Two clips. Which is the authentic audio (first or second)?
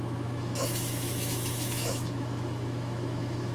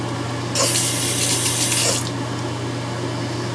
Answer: second